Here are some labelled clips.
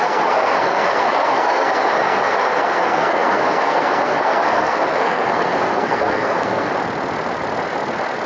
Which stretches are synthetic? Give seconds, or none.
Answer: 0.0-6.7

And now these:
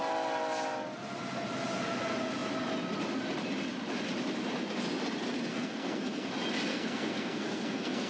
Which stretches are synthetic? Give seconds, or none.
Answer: 5.5-6.3; 6.7-8.1

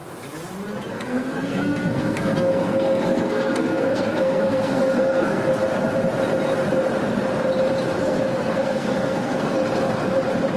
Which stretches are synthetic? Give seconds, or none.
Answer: 0.9-5.5; 8.0-9.6

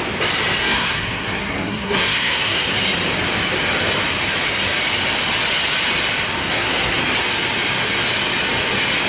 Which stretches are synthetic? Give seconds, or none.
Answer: 0.6-2.7; 6.4-7.0

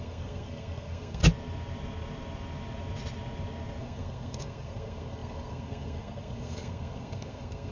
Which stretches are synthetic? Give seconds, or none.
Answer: 0.0-1.2; 3.8-7.7